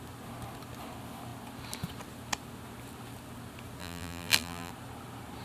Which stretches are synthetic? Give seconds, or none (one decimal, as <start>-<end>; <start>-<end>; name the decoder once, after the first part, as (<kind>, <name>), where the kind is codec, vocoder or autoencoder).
3.8-4.7 (vocoder, BigVGAN v2)